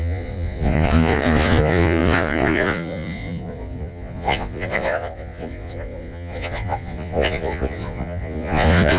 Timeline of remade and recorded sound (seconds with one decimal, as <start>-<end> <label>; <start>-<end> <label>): 0.0-9.0 remade